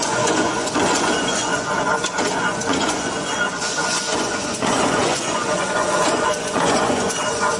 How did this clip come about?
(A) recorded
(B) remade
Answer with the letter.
B